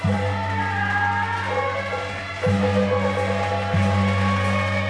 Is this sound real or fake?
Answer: real